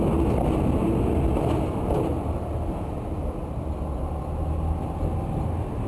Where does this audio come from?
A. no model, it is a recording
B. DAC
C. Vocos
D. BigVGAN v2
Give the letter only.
A